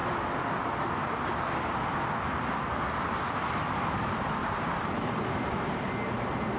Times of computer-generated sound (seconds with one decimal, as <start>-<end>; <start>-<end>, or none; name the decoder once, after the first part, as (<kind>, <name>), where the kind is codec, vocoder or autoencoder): 4.4-5.8 (vocoder, BigVGAN v2)